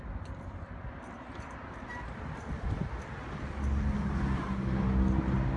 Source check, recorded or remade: recorded